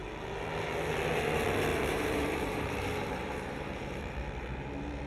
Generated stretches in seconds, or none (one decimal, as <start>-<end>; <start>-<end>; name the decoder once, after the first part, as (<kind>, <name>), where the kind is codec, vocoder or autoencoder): 1.7-4.0 (vocoder, BigVGAN v2)